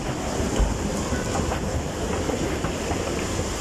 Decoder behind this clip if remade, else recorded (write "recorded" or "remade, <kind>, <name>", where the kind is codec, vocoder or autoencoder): recorded